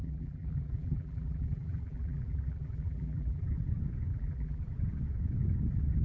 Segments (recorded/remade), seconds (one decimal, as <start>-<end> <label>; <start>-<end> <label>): 0.0-3.6 remade; 3.6-4.1 recorded; 4.1-4.6 remade; 4.6-6.0 recorded